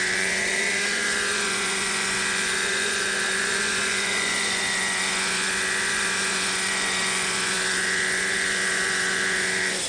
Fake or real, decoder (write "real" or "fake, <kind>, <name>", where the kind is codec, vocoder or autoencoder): fake, vocoder, Vocos